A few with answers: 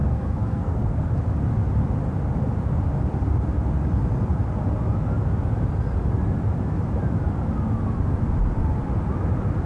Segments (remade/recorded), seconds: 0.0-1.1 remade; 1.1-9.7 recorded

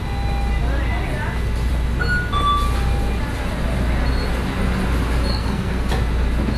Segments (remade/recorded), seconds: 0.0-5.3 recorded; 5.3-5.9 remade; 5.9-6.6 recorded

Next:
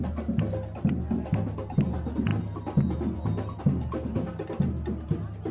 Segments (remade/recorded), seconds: 0.0-5.5 recorded

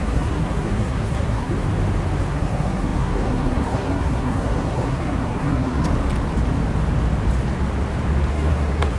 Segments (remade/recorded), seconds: 0.0-1.5 remade; 1.5-2.3 recorded; 2.3-5.9 remade; 5.9-8.3 recorded; 8.3-9.0 remade

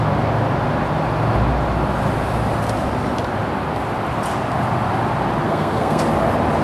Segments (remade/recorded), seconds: 0.0-5.4 recorded; 5.4-6.0 remade; 6.0-6.6 recorded